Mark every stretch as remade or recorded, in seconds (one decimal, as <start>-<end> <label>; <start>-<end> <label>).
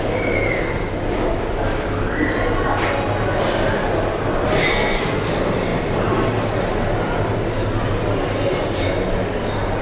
0.0-4.7 recorded; 4.7-5.3 remade; 5.3-9.8 recorded